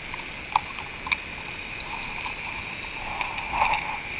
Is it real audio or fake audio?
real